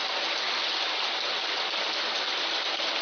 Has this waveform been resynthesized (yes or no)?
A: no